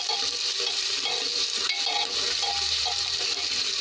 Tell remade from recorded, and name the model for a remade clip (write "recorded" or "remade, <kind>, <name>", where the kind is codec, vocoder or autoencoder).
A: recorded